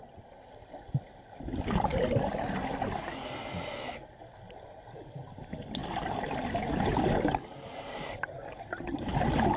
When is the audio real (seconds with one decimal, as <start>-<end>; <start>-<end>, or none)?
0.0-9.6